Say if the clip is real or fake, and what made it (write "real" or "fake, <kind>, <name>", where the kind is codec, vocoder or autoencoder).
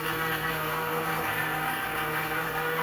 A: fake, codec, SNAC